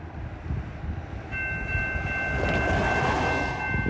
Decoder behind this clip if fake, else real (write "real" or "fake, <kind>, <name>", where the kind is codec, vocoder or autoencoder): real